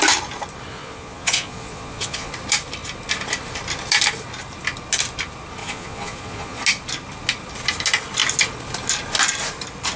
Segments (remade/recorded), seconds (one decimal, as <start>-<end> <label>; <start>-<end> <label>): 0.0-0.7 recorded; 0.7-2.3 remade; 2.3-5.6 recorded; 5.6-6.6 remade; 6.6-10.0 recorded